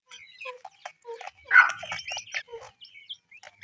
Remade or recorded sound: recorded